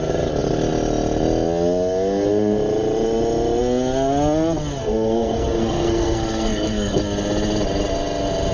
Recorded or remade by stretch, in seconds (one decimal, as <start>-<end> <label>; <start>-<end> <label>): 0.0-4.8 recorded; 4.8-7.0 remade; 7.0-8.5 recorded